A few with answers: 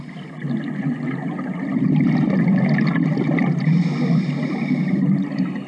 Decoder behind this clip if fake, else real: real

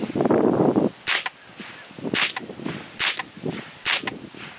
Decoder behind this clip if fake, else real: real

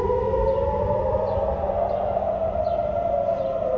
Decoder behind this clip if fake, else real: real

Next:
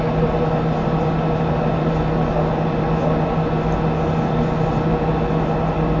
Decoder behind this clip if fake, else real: real